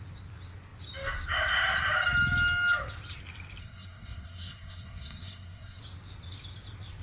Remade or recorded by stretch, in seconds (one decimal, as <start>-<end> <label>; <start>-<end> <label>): 0.0-3.6 recorded; 3.6-5.8 remade; 5.8-7.0 recorded